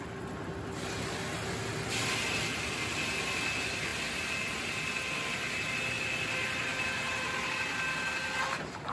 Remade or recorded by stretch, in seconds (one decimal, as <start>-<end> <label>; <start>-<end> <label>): 0.0-6.7 recorded; 6.7-7.5 remade; 7.5-8.9 recorded